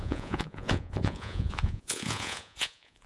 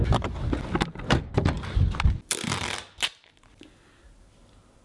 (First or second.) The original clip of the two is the second